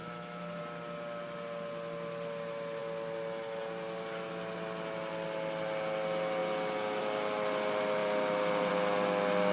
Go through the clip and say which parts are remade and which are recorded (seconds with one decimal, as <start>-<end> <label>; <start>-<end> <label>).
0.0-0.6 remade; 0.6-9.5 recorded